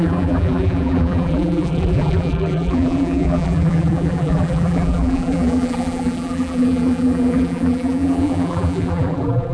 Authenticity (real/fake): fake